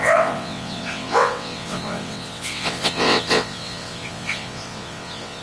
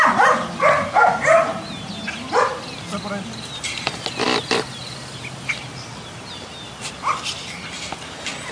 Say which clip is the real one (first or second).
second